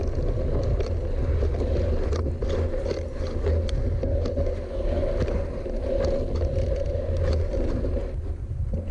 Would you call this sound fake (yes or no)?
no